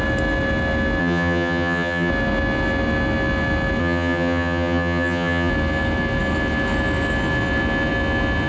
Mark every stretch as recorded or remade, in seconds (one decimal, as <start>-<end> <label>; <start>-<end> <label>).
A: 0.0-1.0 recorded; 1.0-2.1 remade; 2.1-3.8 recorded; 3.8-5.5 remade; 5.5-8.5 recorded